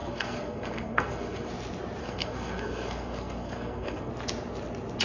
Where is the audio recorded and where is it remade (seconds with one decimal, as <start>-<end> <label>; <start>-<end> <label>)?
0.0-1.5 remade; 1.5-2.0 recorded; 2.0-4.1 remade; 4.1-5.0 recorded